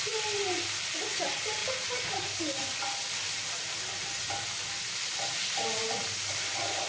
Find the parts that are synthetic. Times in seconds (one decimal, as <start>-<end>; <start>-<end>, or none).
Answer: none